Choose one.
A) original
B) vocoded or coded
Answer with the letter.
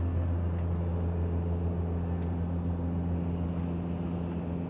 A